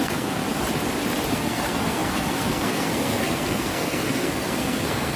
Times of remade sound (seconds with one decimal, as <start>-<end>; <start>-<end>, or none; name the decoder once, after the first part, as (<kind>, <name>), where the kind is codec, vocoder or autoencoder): 0.0-0.4 (codec, SNAC); 1.3-5.2